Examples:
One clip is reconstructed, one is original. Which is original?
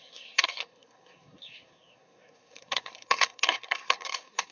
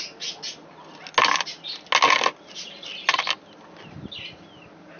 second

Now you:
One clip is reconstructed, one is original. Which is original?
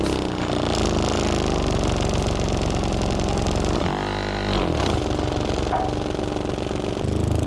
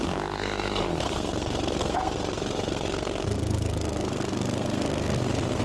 first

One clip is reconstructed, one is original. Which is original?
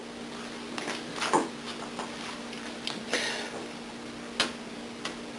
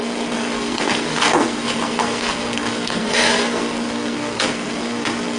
first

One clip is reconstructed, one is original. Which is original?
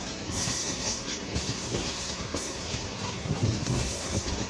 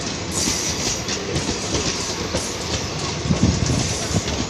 second